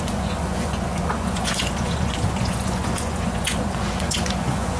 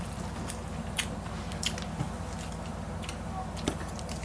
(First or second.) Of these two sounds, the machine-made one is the first